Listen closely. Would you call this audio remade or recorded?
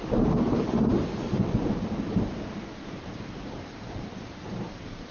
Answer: remade